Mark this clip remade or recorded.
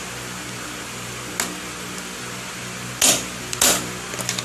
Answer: recorded